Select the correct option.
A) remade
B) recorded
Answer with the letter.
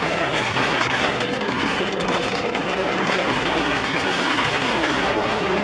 A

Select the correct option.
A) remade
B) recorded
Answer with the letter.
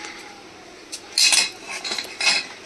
B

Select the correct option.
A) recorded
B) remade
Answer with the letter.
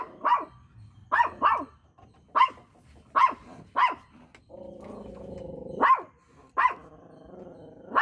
A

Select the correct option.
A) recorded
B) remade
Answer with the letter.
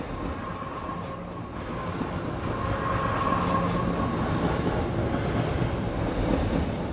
A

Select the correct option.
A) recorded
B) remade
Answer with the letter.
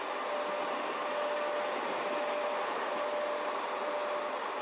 A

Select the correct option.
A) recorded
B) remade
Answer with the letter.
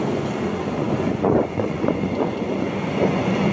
B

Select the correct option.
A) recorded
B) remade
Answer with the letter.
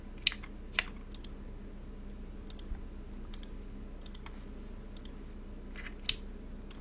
A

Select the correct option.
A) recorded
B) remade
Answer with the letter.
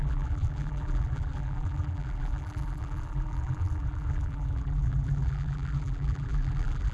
B